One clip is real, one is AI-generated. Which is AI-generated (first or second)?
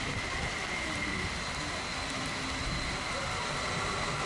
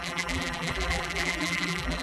second